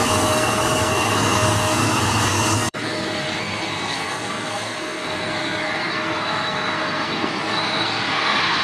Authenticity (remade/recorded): remade